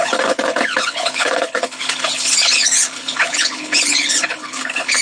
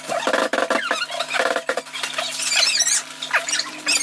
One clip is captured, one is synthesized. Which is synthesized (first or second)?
first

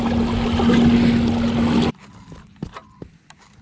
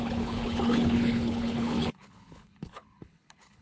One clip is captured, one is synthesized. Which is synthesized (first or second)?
second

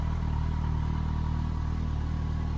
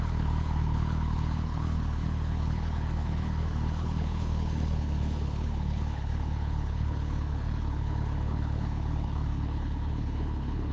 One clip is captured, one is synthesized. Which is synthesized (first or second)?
second